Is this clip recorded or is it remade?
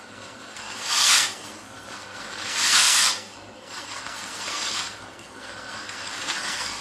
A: remade